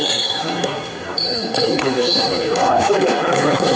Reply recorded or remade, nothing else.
remade